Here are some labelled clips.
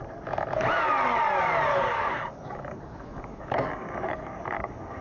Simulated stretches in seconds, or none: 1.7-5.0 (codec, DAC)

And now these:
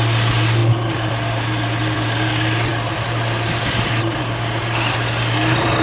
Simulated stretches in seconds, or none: none

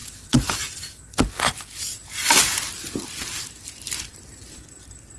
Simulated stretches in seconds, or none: none

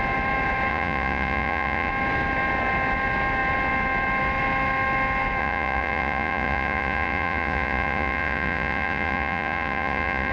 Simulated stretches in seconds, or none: 0.7-1.9 (vocoder, Vocos); 5.4-10.3